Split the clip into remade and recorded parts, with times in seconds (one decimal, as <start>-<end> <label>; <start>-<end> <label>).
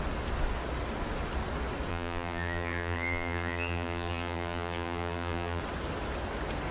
0.0-1.9 recorded; 1.9-5.6 remade; 5.6-6.7 recorded